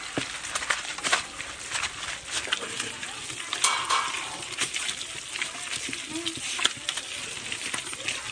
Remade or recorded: recorded